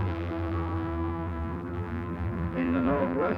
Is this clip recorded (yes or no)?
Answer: no